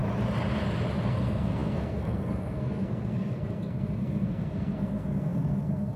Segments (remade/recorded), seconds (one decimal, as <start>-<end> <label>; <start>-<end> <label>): 0.0-1.0 recorded; 1.0-6.0 remade